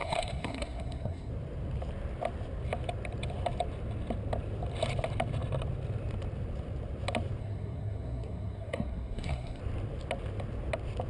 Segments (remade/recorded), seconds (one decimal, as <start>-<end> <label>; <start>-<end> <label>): 0.0-1.3 remade; 1.3-7.4 recorded; 7.4-9.6 remade; 9.6-11.1 recorded